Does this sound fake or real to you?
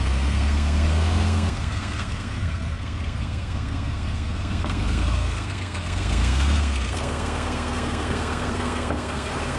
fake